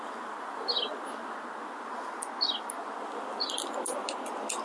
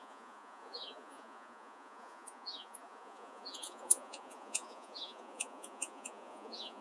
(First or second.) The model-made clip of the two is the second